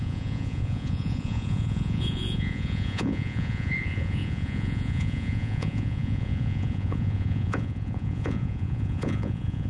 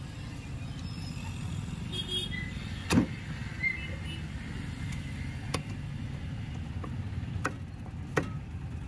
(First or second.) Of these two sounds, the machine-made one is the first